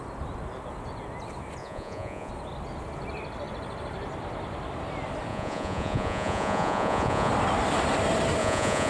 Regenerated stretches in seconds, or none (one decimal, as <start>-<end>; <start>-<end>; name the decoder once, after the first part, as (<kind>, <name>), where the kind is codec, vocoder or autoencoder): 1.6-2.3 (vocoder, Vocos); 5.3-7.3; 8.4-8.9